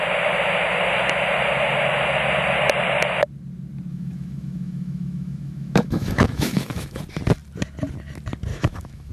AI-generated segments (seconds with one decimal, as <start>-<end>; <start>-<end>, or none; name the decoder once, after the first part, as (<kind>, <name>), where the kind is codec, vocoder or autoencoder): 3.9-7.0 (autoencoder, DAC-VAE); 8.5-9.1